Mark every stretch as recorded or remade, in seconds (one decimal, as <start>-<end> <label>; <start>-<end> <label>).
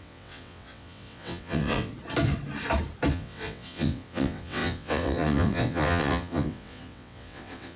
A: 0.0-1.9 remade; 1.9-3.1 recorded; 3.1-7.8 remade